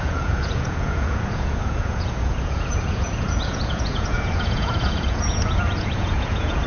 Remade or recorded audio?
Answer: remade